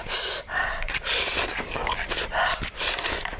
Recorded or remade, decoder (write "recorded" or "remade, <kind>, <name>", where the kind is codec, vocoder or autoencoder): remade, vocoder, BigVGAN v2